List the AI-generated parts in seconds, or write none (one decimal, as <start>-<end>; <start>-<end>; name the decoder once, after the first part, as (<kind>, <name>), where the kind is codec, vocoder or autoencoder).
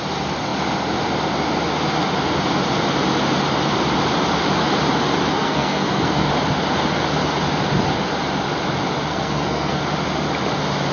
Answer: 5.3-6.3 (codec, SNAC); 9.1-9.8